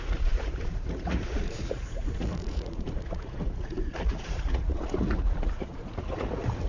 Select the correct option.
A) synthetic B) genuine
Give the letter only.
A